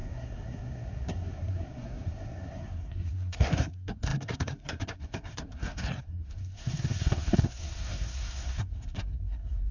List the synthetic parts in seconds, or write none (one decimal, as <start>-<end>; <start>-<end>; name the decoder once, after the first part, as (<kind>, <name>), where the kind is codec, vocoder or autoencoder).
0.0-9.7 (codec, SNAC)